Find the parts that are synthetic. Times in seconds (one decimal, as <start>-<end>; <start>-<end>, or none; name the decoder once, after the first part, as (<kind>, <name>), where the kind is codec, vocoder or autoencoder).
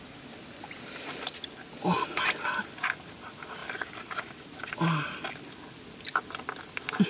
none